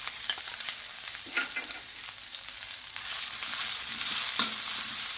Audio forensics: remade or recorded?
recorded